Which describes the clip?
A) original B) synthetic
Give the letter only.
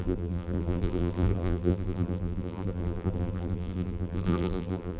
B